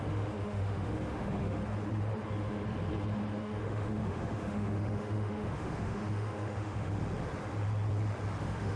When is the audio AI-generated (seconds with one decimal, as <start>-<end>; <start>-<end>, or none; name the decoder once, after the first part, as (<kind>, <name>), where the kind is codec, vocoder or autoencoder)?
0.0-1.6 (autoencoder, DAC-VAE); 3.4-7.0; 8.4-8.8